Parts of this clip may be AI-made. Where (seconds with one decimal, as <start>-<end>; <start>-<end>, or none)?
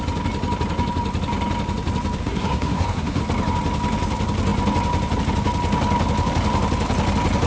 2.2-3.2